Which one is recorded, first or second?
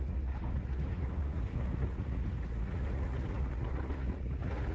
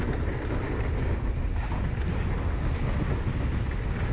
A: second